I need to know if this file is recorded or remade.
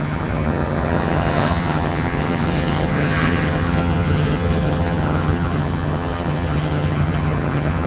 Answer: remade